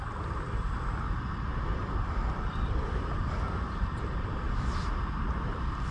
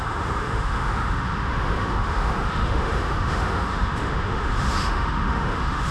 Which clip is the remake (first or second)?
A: second